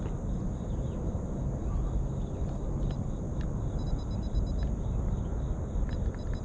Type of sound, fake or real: real